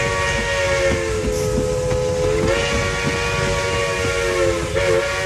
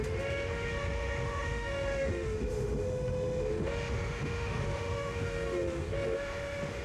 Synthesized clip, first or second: second